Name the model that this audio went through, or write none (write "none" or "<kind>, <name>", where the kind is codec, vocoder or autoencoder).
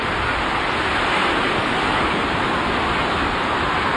none